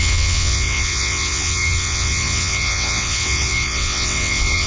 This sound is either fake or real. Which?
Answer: fake